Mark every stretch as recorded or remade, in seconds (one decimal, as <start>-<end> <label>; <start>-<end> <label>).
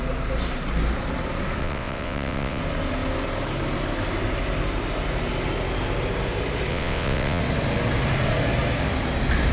0.0-1.6 recorded; 1.6-2.6 remade; 2.6-6.7 recorded; 6.7-7.4 remade; 7.4-9.5 recorded